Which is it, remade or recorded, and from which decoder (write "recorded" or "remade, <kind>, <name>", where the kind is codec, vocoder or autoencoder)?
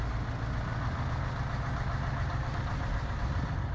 recorded